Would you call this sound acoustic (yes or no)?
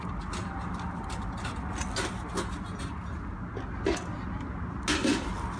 yes